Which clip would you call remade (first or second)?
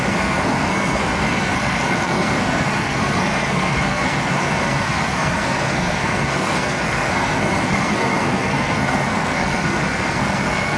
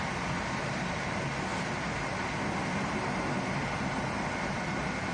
first